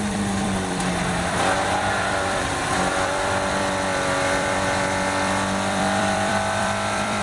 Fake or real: fake